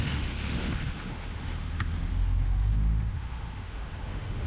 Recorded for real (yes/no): no